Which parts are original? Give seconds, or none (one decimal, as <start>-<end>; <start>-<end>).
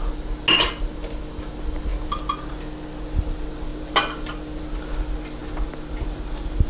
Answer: 0.0-6.7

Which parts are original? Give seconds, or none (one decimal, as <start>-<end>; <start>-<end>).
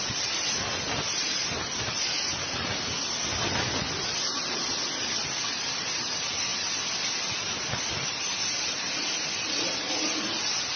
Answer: 0.0-10.8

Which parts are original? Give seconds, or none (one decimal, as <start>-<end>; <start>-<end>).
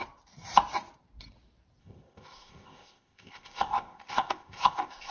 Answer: 0.0-1.8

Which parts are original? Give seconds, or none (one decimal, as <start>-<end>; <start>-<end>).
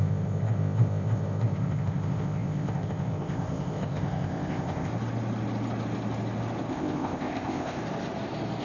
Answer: 4.9-6.7; 7.8-8.6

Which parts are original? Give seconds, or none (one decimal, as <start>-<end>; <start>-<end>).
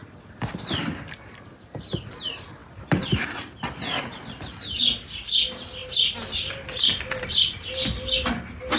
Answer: 0.0-8.8